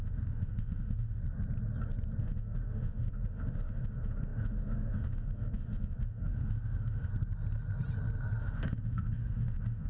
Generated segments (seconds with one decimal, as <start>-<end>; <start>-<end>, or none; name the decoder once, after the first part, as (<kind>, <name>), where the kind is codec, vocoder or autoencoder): 0.0-1.2 (autoencoder, DAC-VAE); 2.2-7.1; 8.4-9.9